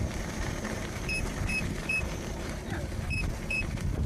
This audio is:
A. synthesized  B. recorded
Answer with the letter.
A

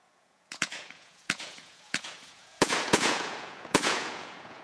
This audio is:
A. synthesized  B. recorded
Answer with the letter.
A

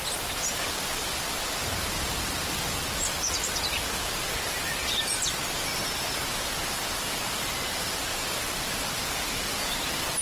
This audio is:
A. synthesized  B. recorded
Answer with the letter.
B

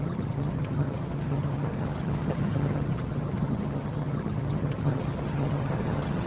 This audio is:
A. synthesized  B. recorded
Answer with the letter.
A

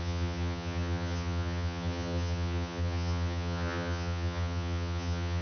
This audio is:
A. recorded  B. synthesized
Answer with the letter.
B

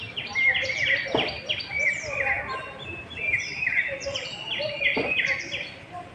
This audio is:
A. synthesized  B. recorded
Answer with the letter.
A